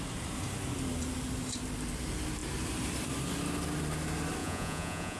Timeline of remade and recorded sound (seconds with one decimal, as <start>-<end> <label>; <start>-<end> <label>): 0.0-4.4 recorded; 4.4-5.2 remade